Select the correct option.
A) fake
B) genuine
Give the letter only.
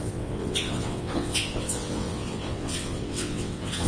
A